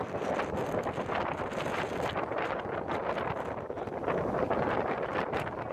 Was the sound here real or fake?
real